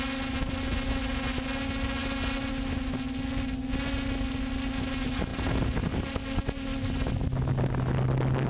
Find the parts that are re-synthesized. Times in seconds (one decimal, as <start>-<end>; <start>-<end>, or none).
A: none